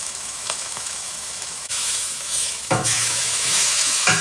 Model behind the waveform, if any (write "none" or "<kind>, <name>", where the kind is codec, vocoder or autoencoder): autoencoder, DAC-VAE